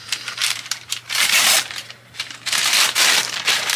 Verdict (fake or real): fake